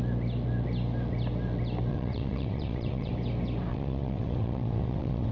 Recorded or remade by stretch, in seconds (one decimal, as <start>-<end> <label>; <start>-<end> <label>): 0.0-1.9 recorded; 1.9-3.1 remade; 3.1-3.7 recorded; 3.7-5.3 remade